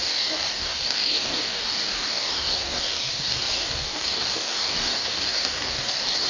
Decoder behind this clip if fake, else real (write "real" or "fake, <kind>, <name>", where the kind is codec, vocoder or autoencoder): fake, codec, DAC